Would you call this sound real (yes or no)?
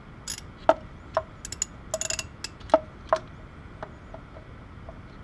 yes